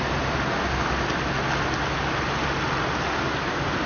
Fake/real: real